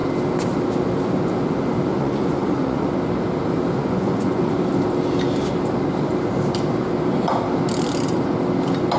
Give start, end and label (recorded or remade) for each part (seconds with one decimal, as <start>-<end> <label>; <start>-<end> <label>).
0.0-1.9 recorded; 1.9-3.0 remade; 3.0-3.8 recorded; 3.8-4.5 remade; 4.5-9.0 recorded